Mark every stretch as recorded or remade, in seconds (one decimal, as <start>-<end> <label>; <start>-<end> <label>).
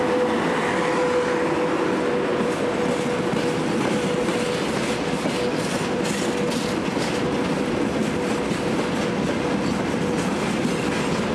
0.0-11.3 recorded